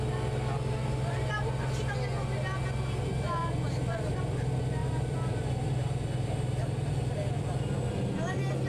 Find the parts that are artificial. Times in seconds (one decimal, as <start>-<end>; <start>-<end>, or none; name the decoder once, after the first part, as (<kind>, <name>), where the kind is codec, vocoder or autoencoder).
4.8-5.5 (vocoder, BigVGAN v2)